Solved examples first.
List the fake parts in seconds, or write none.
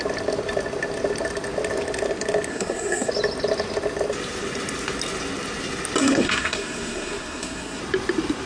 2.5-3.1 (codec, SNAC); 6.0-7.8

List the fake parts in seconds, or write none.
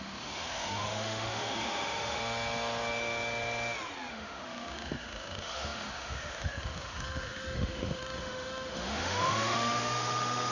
0.0-2.2 (autoencoder, DAC-VAE); 4.1-10.5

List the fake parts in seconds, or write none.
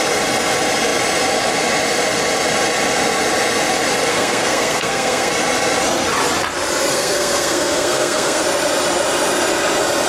4.1-5.3 (codec, SNAC); 6.9-8.4